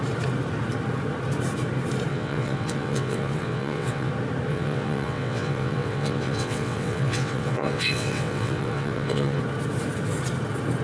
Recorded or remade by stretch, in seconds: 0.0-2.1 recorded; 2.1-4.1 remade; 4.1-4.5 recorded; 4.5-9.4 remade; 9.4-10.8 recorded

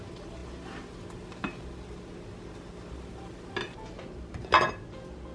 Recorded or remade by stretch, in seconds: 0.0-5.3 recorded

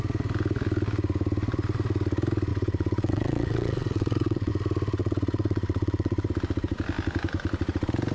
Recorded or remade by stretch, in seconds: 0.0-2.5 recorded; 2.5-4.5 remade; 4.5-5.0 recorded; 5.0-6.3 remade; 6.3-8.1 recorded